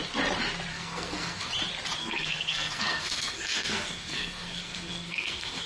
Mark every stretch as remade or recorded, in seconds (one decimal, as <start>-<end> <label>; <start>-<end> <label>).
0.0-0.7 recorded; 0.7-1.5 remade; 1.5-2.0 recorded; 2.0-5.7 remade